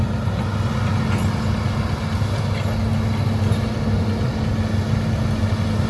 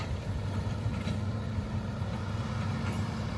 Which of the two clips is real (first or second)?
first